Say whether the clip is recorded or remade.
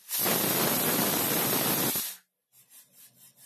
recorded